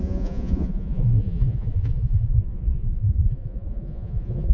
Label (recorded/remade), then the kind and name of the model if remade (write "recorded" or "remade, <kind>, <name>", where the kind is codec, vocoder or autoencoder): remade, vocoder, Vocos